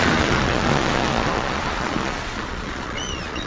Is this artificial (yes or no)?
yes